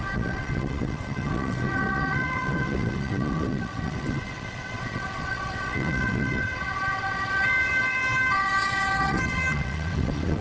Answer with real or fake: fake